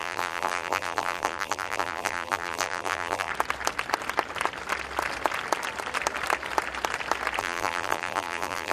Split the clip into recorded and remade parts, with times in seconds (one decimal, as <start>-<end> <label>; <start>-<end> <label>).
0.0-3.3 remade; 3.3-7.4 recorded; 7.4-8.7 remade